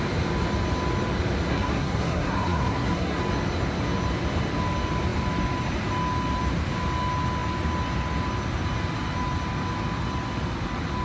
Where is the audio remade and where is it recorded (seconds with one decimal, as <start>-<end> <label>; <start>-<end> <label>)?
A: 0.0-1.5 recorded; 1.5-3.2 remade; 3.2-11.0 recorded